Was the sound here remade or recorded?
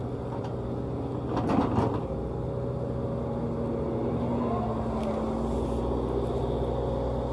recorded